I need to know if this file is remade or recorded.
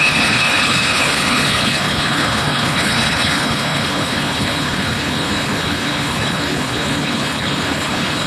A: remade